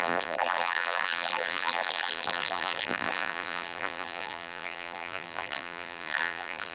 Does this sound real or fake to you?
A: fake